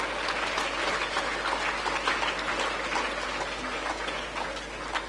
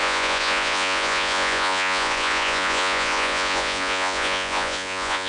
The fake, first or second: second